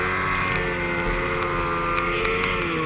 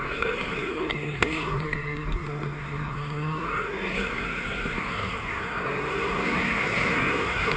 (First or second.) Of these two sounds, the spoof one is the second